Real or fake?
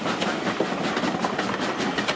real